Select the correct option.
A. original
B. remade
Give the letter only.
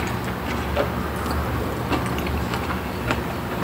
A